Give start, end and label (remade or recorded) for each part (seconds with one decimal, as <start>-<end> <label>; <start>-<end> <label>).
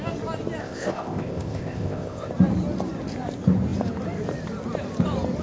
0.0-0.6 recorded; 0.6-2.3 remade; 2.3-5.4 recorded